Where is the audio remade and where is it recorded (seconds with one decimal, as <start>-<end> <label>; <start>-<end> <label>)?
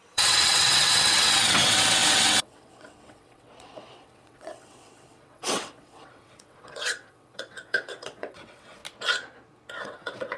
0.0-8.8 remade; 8.8-9.7 recorded; 9.7-10.4 remade